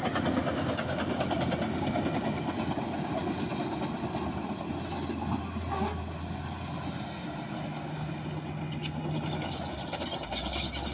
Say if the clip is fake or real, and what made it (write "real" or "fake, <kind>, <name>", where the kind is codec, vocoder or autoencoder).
real